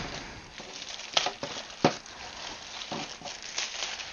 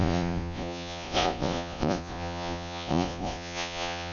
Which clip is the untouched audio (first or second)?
first